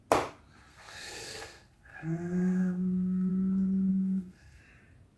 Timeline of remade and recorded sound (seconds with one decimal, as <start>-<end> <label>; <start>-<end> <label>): 0.0-0.7 recorded; 0.7-3.3 remade; 3.3-3.9 recorded; 3.9-4.6 remade; 4.6-5.2 recorded